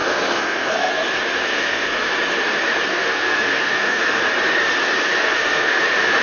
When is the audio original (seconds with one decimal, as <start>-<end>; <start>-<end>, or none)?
0.9-1.5; 2.1-2.9; 4.2-5.2; 5.8-6.2